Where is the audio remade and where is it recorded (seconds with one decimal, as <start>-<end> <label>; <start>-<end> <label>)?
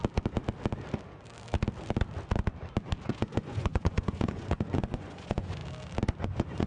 0.0-3.0 recorded; 3.0-5.6 remade; 5.6-6.2 recorded; 6.2-6.7 remade